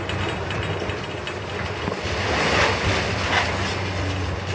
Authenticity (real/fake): real